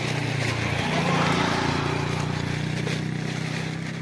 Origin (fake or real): real